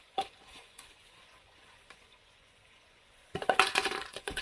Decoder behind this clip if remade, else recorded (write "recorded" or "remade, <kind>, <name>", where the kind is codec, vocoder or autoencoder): remade, vocoder, Vocos